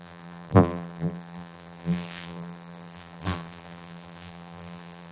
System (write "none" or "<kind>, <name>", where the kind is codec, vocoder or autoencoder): vocoder, BigVGAN v2